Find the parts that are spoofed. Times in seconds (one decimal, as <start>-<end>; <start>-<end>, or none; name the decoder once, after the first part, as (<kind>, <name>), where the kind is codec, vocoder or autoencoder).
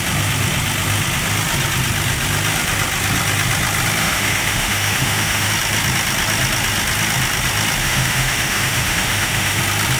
4.0-5.5 (autoencoder, DAC-VAE); 7.8-9.6